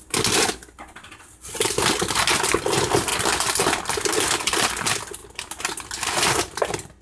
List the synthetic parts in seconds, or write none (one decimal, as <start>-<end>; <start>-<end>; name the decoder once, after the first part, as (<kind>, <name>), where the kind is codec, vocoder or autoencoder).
none

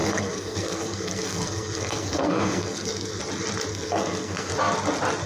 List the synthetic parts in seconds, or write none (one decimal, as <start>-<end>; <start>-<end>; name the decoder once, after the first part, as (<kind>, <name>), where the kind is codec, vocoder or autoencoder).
0.0-3.2 (codec, SNAC); 3.7-4.5

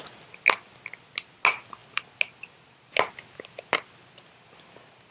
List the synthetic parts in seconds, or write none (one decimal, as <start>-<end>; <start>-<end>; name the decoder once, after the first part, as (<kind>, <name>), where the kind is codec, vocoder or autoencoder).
none

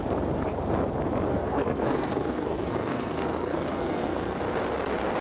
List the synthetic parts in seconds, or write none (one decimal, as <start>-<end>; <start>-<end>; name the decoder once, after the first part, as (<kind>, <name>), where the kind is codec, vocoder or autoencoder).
1.3-4.4 (codec, SNAC)

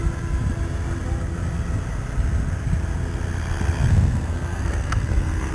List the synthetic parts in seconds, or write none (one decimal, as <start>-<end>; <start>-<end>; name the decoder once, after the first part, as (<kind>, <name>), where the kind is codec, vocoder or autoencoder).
3.9-5.5 (codec, SNAC)

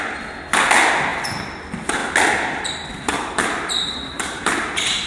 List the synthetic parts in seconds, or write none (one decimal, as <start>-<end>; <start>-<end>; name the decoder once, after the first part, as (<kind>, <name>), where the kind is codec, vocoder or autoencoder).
3.1-5.1 (vocoder, BigVGAN v2)

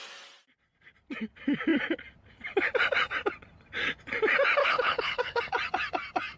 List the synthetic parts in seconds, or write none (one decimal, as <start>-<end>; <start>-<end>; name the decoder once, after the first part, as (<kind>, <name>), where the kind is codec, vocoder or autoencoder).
4.6-5.4 (codec, HILCodec)

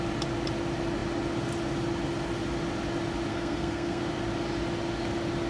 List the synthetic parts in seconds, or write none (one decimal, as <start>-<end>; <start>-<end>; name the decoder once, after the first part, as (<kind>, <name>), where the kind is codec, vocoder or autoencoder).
3.3-4.0 (codec, SNAC)